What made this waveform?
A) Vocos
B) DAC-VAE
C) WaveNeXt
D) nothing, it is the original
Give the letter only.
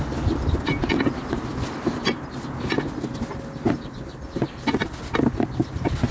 D